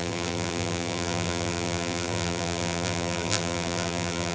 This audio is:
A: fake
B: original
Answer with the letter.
A